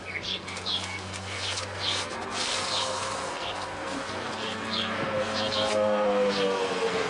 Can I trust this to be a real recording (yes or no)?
no